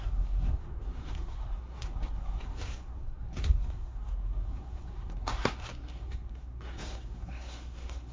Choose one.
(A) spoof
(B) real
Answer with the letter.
A